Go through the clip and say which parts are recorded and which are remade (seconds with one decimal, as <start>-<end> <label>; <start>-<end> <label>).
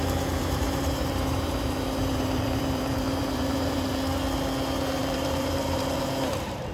0.0-0.4 recorded; 0.4-3.9 remade; 3.9-5.0 recorded; 5.0-6.1 remade; 6.1-6.7 recorded